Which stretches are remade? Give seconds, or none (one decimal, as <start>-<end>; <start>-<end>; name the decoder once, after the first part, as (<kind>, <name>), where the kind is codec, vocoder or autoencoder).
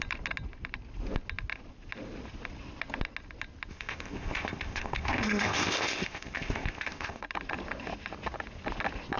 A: 3.7-7.2 (codec, ZipCodec)